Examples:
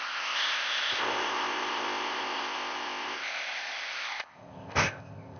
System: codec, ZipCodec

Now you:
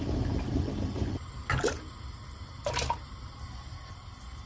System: none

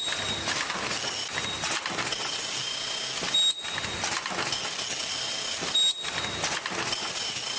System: none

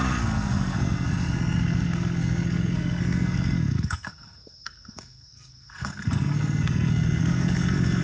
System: codec, SNAC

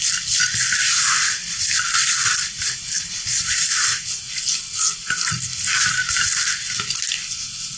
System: none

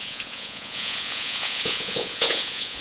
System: vocoder, Vocos